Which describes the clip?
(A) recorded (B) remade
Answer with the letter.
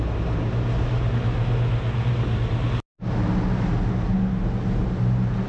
A